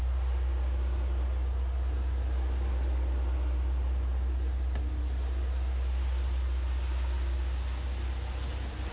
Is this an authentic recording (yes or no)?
yes